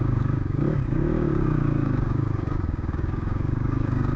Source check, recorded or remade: remade